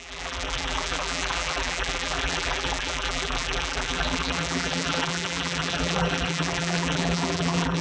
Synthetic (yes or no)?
yes